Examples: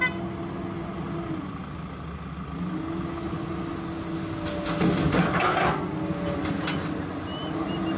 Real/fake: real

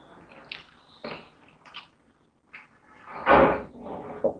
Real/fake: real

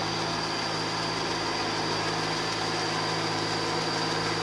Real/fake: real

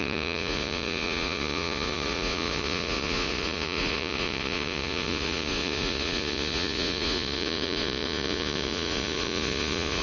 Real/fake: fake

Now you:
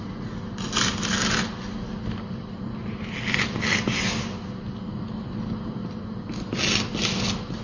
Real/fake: real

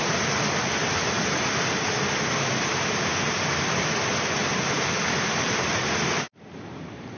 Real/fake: real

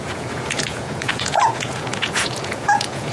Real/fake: fake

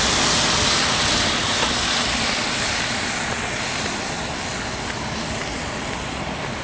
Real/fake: real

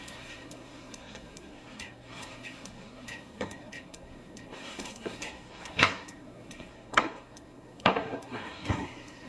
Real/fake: fake